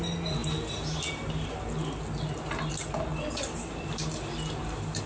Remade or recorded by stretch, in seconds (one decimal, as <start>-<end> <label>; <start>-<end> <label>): 0.0-5.1 recorded